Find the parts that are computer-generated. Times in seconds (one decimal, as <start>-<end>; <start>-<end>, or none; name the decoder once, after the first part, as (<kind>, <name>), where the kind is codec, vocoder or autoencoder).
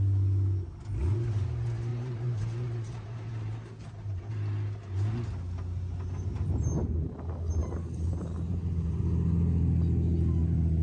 1.9-4.3 (vocoder, BigVGAN v2); 7.6-9.0